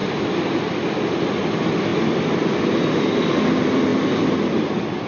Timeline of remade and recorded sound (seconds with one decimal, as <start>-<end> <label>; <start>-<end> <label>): 0.0-5.1 recorded